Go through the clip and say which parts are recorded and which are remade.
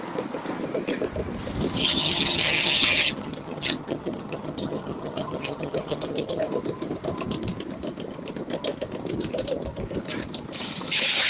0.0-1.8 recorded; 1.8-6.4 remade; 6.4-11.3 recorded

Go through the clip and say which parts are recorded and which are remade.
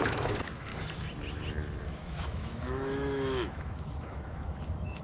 0.0-0.7 remade; 0.7-1.8 recorded; 1.8-5.0 remade